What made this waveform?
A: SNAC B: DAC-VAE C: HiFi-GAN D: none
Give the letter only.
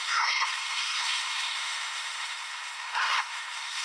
A